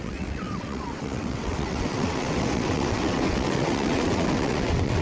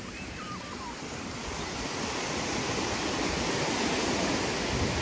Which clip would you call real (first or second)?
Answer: second